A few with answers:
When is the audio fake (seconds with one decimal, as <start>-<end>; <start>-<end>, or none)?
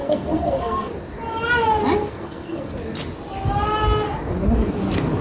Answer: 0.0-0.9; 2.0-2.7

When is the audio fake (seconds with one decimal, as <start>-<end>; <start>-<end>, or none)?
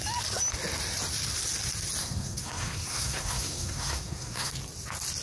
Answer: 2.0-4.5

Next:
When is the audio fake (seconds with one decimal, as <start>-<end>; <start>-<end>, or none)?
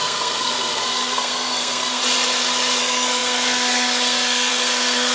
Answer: 0.0-2.0; 2.8-5.1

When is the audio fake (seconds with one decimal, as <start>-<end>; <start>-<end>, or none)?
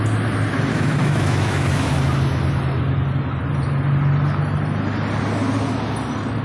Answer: 0.7-1.9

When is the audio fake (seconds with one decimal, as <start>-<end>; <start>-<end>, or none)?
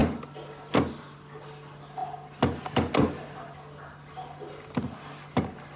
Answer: none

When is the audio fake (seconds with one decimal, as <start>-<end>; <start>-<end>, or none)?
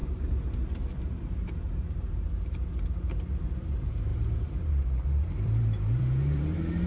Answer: 0.0-6.9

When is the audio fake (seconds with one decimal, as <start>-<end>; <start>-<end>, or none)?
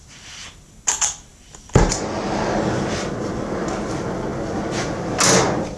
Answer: none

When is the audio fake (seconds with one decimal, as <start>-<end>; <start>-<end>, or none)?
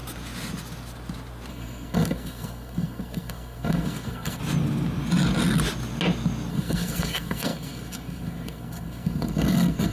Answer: 1.5-4.4; 6.5-9.9